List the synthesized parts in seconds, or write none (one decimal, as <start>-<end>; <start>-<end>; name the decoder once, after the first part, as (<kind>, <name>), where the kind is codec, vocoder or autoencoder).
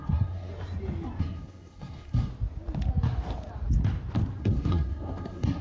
0.0-0.5 (codec, SNAC); 1.2-2.3; 4.4-5.6